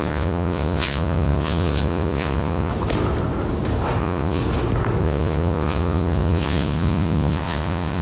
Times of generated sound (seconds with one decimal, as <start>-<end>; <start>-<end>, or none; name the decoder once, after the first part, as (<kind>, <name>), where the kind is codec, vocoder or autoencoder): 0.0-2.7 (vocoder, Vocos); 4.0-4.4; 5.0-8.0